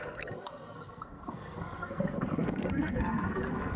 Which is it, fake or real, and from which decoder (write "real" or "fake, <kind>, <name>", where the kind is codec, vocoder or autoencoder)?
fake, codec, SNAC